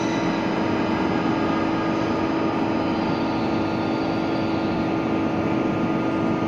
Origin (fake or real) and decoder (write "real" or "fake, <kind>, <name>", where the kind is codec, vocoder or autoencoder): real